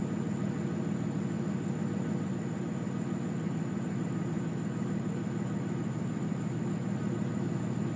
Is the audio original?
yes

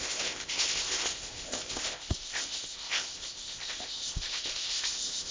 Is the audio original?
no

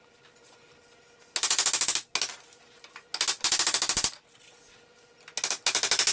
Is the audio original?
yes